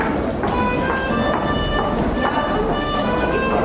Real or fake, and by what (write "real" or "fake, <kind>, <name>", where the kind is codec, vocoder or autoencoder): real